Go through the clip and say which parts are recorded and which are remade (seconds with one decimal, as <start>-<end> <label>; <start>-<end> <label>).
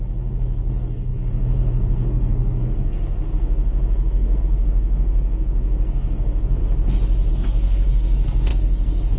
0.0-6.6 remade; 6.6-7.3 recorded; 7.3-9.2 remade